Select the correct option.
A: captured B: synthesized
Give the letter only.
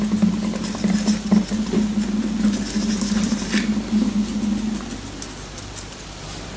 A